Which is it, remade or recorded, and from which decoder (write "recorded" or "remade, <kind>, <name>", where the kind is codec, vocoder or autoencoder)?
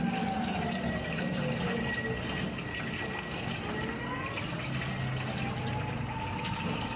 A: recorded